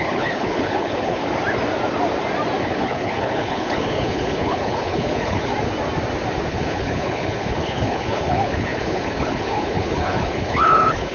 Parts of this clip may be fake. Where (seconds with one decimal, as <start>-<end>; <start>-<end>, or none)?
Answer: 0.0-1.2; 2.6-5.5; 6.5-11.1